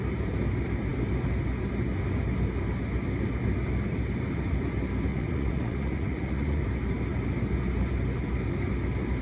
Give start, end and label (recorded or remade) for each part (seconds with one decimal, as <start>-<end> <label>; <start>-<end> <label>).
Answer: 0.0-5.1 recorded; 5.1-6.6 remade; 6.6-9.2 recorded